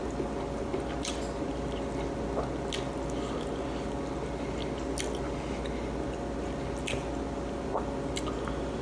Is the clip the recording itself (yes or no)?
yes